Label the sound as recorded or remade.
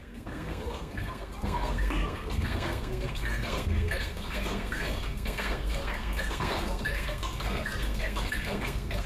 remade